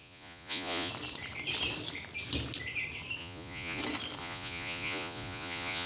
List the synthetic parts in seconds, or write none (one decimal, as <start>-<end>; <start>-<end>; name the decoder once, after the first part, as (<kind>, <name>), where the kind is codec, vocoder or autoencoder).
0.0-0.9 (vocoder, Vocos); 3.2-3.8; 4.2-5.9